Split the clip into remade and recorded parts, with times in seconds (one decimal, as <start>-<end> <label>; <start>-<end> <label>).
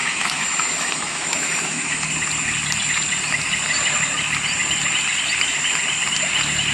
0.0-2.1 remade; 2.1-6.7 recorded